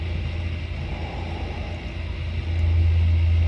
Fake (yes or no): no